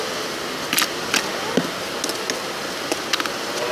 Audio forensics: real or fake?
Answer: real